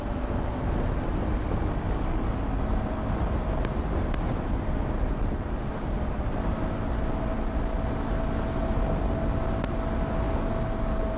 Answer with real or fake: real